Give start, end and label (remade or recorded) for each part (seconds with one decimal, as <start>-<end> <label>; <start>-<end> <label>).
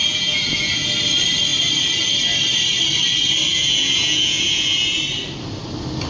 0.0-0.9 remade; 0.9-3.5 recorded; 3.5-5.0 remade; 5.0-6.1 recorded